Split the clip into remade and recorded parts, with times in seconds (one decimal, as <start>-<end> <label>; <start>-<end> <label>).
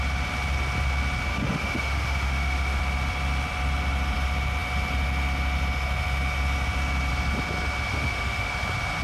0.0-1.3 recorded; 1.3-2.8 remade; 2.8-7.9 recorded; 7.9-8.5 remade; 8.5-9.0 recorded